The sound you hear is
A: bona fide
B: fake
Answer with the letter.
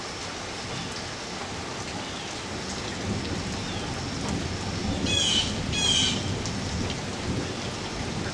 A